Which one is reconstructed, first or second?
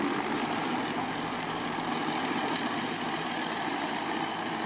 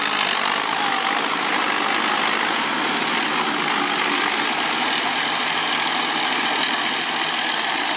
first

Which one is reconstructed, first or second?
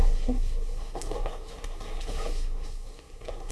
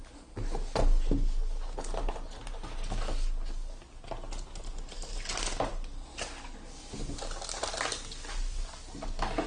first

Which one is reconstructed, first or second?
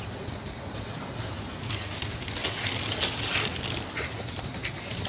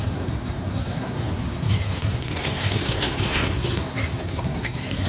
second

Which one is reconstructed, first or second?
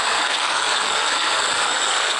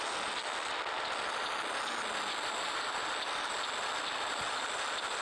first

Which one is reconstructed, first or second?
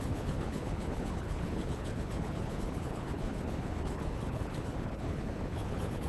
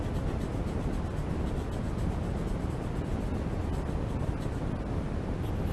first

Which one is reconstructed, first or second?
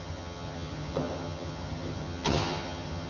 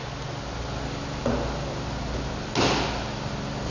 first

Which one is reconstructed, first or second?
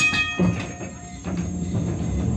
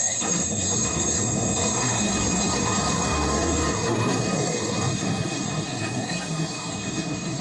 second